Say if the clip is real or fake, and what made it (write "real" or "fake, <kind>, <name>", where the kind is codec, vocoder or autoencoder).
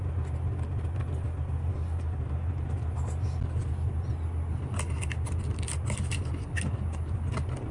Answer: real